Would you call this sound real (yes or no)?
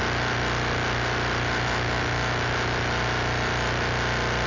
yes